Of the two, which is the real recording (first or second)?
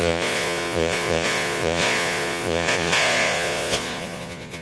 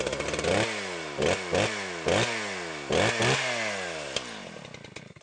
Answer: second